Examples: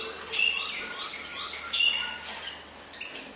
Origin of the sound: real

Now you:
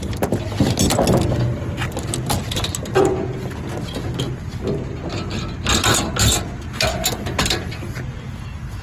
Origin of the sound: real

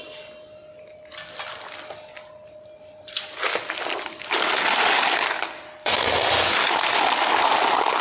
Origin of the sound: real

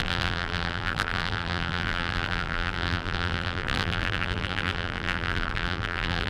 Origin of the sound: fake